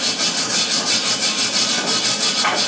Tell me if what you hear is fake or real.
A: real